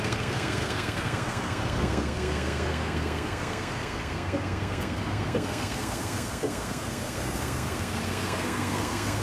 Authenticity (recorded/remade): remade